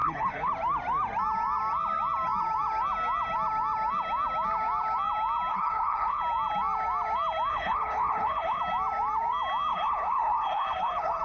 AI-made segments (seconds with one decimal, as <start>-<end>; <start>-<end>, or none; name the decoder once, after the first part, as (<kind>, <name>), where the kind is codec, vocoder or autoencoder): 0.0-0.5 (codec, HILCodec); 5.5-6.2; 7.5-8.6; 9.7-11.2